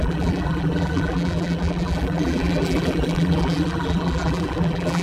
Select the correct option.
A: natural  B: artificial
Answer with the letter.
B